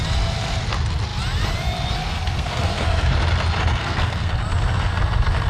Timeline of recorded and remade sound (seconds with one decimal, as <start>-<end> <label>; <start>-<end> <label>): 0.0-2.0 recorded; 2.0-3.1 remade; 3.1-3.8 recorded; 3.8-4.3 remade; 4.3-5.5 recorded